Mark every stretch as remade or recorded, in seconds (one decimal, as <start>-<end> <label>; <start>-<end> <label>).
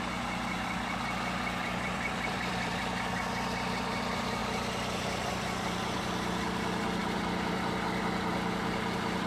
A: 0.0-1.6 recorded; 1.6-2.8 remade; 2.8-7.0 recorded; 7.0-7.6 remade; 7.6-9.3 recorded